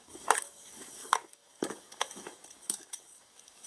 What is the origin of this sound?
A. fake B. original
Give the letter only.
A